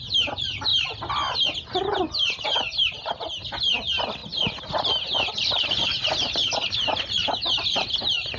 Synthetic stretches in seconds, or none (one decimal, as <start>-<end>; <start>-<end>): none